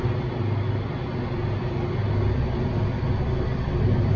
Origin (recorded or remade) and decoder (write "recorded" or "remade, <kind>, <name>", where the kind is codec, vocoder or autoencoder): recorded